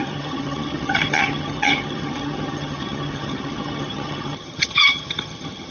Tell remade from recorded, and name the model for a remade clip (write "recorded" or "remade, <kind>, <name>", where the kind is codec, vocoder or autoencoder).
remade, vocoder, HiFi-GAN